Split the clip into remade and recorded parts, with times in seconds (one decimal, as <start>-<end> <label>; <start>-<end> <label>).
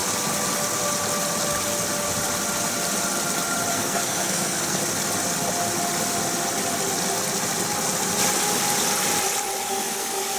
0.0-3.7 recorded; 3.7-4.8 remade; 4.8-9.7 recorded; 9.7-10.4 remade